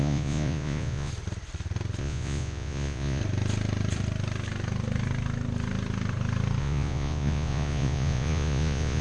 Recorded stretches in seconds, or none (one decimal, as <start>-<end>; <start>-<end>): 1.1-2.0; 3.2-6.6

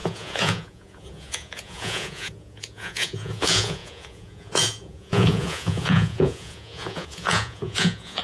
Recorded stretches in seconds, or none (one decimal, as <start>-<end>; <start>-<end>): none

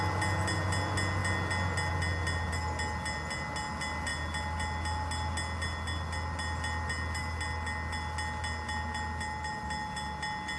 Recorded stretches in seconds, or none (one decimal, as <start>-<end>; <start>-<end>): 0.0-10.6

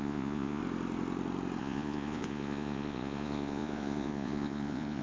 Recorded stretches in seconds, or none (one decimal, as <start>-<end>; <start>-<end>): 0.6-1.6